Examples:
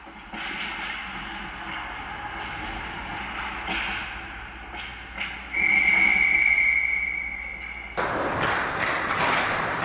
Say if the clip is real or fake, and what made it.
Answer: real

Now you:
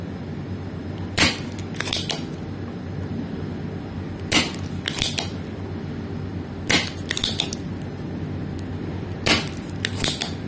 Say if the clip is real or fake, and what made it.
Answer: real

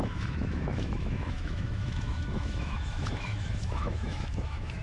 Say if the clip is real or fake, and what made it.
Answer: fake, autoencoder, DAC-VAE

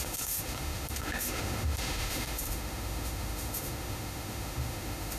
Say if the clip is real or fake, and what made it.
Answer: fake, autoencoder, DAC-VAE